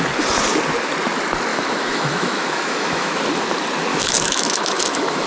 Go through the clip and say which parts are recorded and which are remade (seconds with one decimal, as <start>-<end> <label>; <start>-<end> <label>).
0.0-1.5 recorded; 1.5-3.2 remade; 3.2-3.9 recorded; 3.9-5.3 remade